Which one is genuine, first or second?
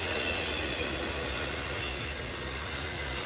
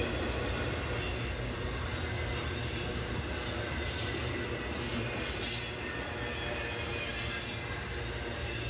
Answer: second